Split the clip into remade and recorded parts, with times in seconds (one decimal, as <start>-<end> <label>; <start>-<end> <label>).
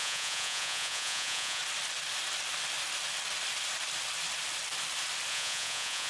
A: 0.0-1.6 remade; 1.6-5.3 recorded; 5.3-6.1 remade